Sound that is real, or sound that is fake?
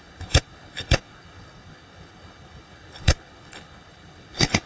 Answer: fake